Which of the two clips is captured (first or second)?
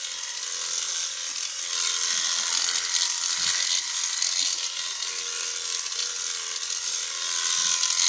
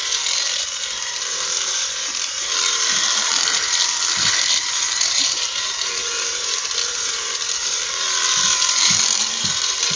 first